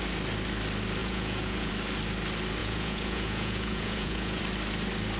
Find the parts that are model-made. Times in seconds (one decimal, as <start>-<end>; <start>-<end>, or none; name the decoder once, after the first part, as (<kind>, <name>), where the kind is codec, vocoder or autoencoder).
1.0-1.7 (vocoder, Vocos); 2.6-4.4